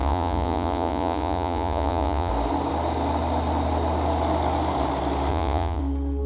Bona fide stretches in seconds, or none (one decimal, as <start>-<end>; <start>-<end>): 2.3-5.3; 5.8-6.3